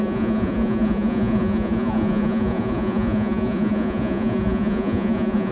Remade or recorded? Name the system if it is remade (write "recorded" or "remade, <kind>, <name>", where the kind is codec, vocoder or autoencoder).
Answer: remade, vocoder, Vocos